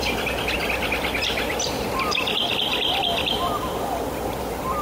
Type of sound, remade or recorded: recorded